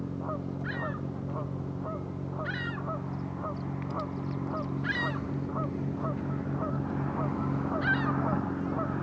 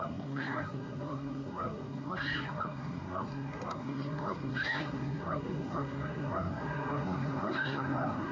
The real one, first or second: first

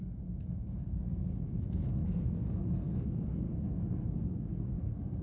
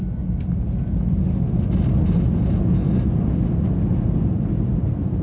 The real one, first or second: second